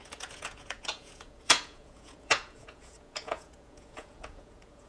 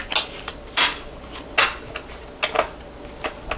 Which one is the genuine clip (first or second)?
second